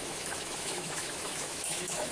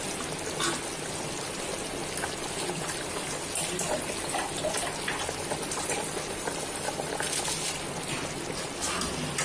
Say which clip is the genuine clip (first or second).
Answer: second